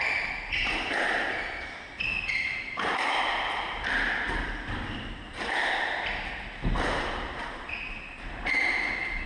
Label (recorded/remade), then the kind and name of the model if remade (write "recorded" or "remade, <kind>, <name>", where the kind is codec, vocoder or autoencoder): recorded